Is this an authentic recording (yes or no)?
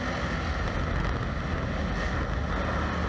yes